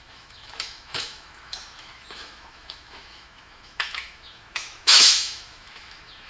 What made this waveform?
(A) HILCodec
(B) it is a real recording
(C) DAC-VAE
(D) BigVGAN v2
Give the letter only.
C